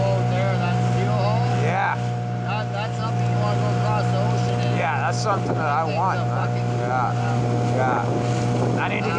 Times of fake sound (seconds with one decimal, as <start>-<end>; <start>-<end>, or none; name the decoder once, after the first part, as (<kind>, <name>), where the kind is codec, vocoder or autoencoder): none